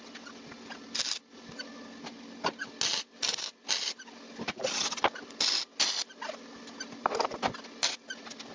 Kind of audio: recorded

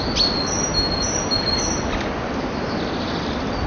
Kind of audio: recorded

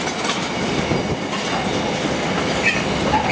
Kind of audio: recorded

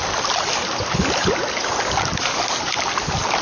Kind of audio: recorded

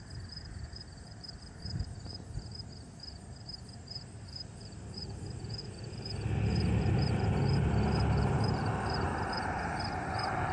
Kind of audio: remade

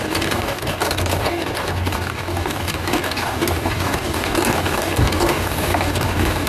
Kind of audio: remade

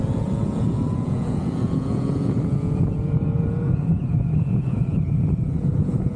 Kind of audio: remade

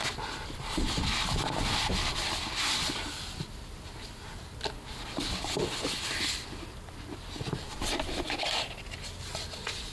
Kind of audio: recorded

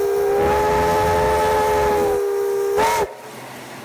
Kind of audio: recorded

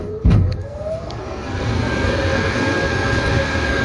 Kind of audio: remade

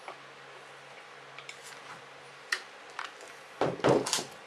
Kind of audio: recorded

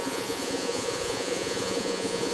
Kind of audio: remade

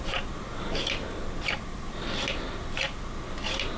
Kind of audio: recorded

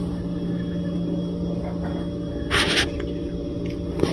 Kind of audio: recorded